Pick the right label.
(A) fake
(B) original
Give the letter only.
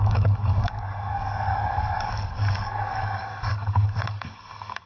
A